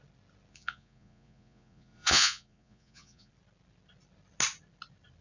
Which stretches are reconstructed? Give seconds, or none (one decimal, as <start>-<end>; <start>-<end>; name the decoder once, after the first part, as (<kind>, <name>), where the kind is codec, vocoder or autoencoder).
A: 0.5-3.3 (vocoder, Vocos)